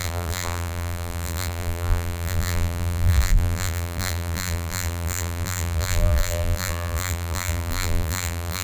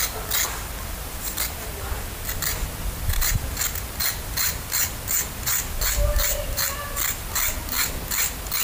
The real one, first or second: second